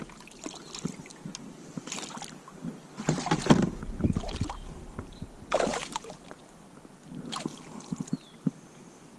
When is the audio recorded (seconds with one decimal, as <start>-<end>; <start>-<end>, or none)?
0.0-9.2